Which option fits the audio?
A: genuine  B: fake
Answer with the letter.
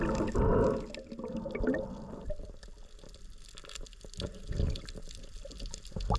A